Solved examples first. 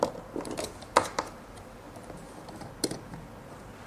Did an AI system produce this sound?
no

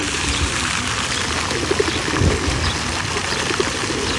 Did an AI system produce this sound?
no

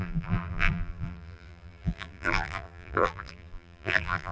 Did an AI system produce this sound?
yes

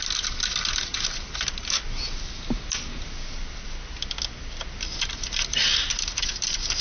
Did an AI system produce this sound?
no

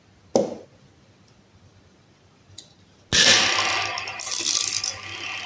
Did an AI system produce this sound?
no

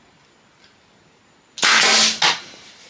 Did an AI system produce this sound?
no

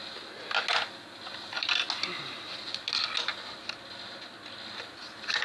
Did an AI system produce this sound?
no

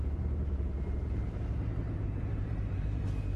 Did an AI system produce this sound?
yes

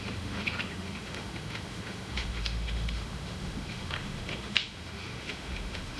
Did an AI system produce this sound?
yes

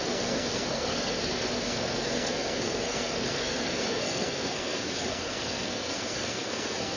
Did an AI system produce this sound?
yes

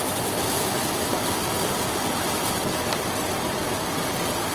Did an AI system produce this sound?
yes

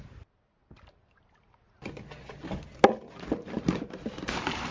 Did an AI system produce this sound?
no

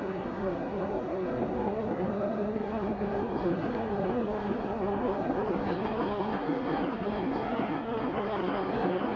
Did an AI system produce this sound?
yes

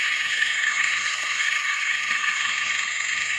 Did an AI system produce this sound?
yes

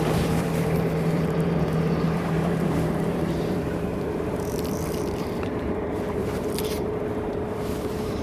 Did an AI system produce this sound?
yes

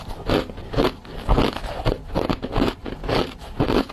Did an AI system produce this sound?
no